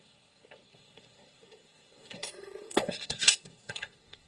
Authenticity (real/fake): fake